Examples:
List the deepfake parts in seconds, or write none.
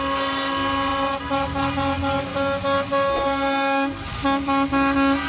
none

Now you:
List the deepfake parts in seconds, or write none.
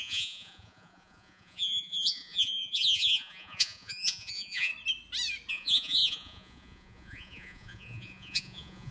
0.0-4.7 (vocoder, Vocos); 5.5-8.9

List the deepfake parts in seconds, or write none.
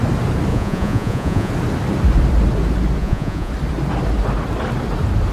0.5-1.5 (vocoder, Vocos); 3.0-3.5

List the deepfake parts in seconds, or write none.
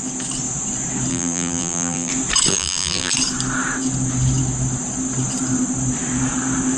1.1-2.1 (vocoder, BigVGAN v2); 2.5-3.1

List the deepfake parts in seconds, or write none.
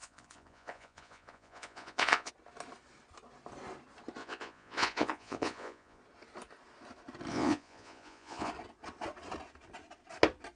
0.0-2.3 (vocoder, Vocos); 4.2-6.0; 7.3-8.5